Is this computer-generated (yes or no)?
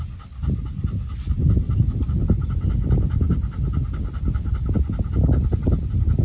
no